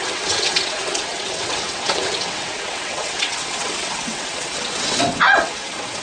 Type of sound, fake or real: fake